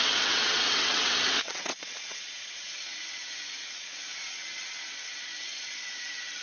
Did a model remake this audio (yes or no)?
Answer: yes